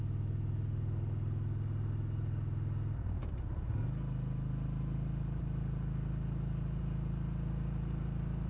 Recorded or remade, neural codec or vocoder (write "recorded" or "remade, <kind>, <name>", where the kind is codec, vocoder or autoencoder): recorded